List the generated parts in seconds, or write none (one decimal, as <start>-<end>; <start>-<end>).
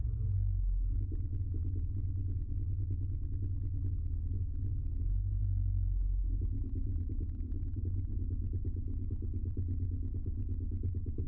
6.2-7.8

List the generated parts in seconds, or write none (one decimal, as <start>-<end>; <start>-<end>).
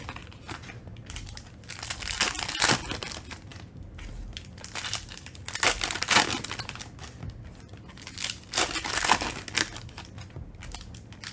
3.5-6.1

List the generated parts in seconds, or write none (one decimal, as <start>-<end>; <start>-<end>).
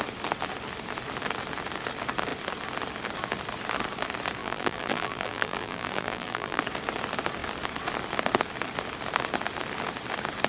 4.4-6.6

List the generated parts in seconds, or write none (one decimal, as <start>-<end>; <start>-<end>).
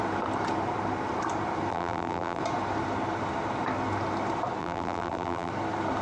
1.7-2.4; 4.6-5.5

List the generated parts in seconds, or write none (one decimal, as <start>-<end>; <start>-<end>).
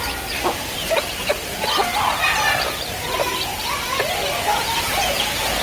0.0-1.3; 4.7-5.6